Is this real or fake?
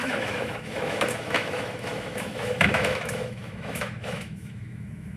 fake